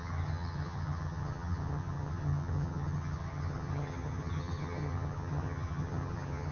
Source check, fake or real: fake